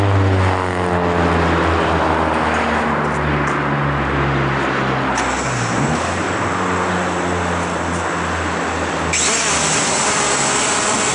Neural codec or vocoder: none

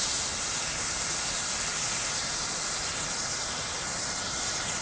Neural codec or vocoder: none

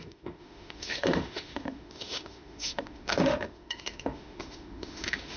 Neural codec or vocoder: autoencoder, DAC-VAE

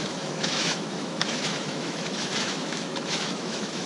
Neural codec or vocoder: autoencoder, DAC-VAE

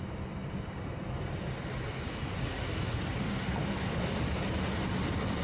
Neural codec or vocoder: none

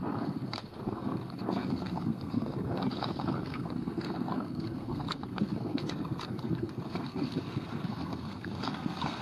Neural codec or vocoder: codec, SNAC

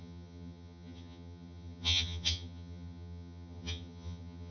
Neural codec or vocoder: vocoder, HiFi-GAN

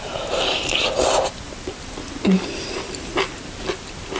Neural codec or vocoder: none